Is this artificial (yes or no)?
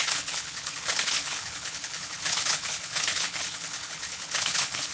yes